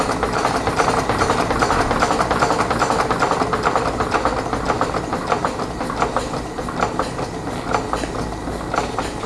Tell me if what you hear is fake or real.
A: real